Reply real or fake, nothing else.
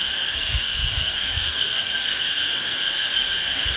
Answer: fake